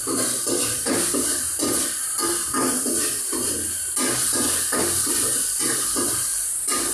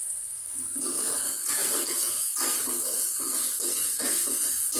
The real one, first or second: first